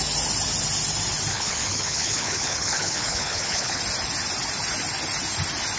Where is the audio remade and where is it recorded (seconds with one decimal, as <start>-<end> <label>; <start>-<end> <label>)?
0.0-1.3 recorded; 1.3-3.8 remade; 3.8-5.8 recorded